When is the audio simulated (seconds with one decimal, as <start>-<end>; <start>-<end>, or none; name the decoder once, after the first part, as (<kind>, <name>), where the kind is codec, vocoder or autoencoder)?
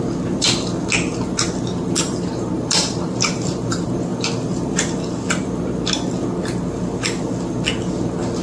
1.7-4.1 (vocoder, BigVGAN v2)